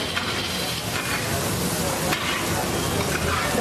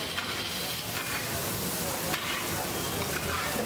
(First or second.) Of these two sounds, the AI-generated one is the second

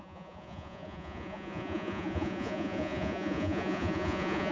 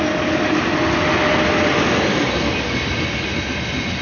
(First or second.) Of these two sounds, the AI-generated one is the first